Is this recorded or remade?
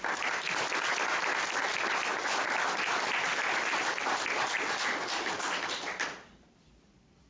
remade